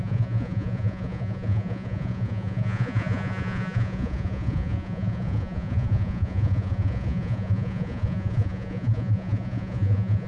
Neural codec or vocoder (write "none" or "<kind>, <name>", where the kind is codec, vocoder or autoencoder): vocoder, Vocos